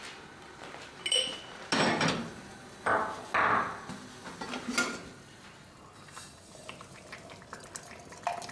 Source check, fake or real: real